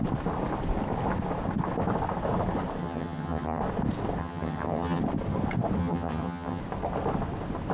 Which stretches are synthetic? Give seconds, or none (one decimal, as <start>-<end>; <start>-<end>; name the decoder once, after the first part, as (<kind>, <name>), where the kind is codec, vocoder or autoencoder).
2.8-3.6 (vocoder, HiFi-GAN); 4.2-5.0; 5.8-6.6